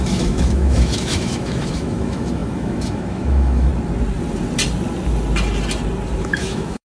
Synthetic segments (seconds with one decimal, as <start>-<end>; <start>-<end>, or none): 0.0-3.7; 6.2-6.8